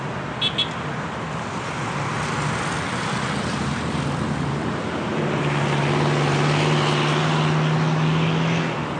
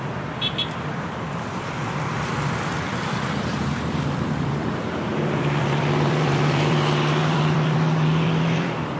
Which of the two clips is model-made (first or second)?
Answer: second